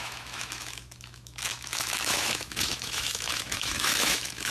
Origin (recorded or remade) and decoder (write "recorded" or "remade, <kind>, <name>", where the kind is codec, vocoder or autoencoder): remade, autoencoder, DAC-VAE